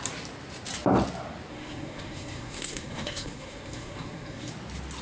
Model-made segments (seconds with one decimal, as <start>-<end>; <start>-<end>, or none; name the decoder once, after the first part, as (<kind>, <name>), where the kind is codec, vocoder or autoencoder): 1.5-4.5 (codec, SNAC)